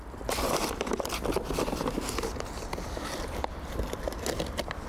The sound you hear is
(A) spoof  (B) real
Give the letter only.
A